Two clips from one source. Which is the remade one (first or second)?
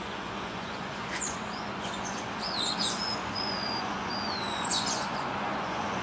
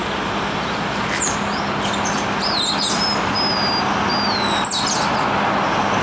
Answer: first